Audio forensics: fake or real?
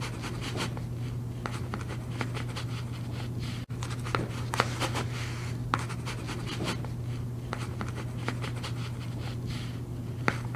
fake